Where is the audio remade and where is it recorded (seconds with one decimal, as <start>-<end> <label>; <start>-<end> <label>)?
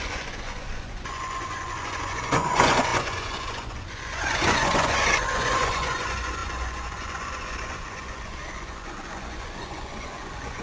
0.0-10.6 remade